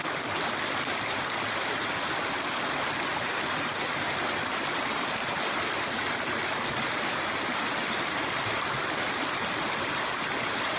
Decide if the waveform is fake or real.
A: real